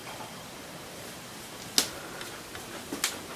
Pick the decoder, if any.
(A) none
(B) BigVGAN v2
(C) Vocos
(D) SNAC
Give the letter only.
A